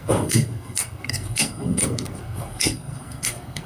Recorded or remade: remade